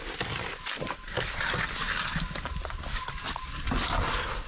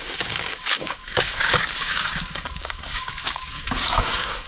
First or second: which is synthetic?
second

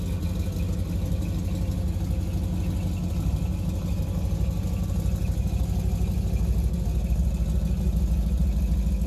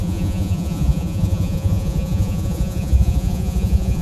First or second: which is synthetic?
second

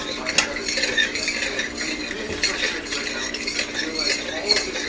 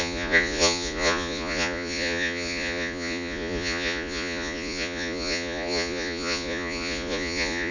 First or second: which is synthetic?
second